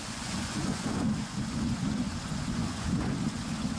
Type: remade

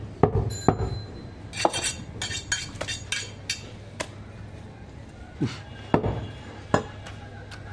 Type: recorded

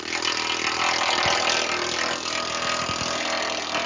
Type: recorded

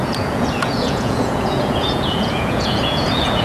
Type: remade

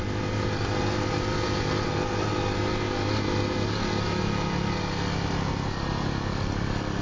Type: recorded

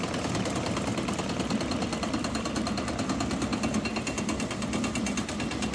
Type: recorded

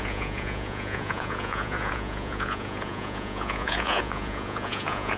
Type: remade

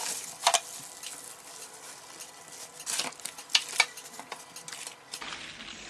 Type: recorded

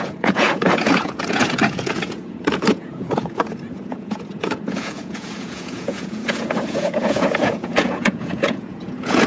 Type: remade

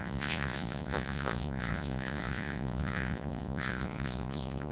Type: remade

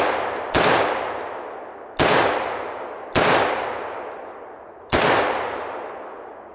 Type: recorded